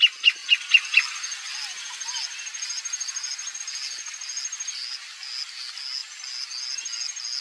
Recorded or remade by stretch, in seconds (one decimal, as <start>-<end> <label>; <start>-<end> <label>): 0.0-7.4 recorded